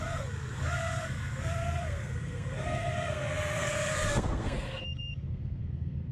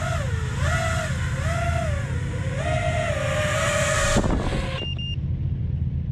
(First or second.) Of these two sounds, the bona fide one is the second